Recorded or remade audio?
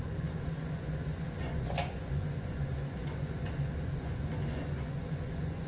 remade